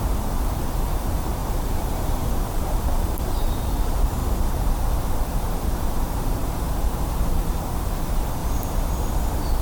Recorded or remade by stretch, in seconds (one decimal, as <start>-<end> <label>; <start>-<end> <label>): 0.0-4.2 remade; 4.2-5.0 recorded; 5.0-8.4 remade; 8.4-9.6 recorded